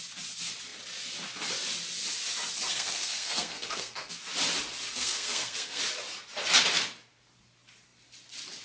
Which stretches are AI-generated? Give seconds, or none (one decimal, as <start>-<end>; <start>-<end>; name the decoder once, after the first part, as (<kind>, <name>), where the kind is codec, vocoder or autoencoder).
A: 2.7-4.2 (codec, SNAC); 4.9-5.8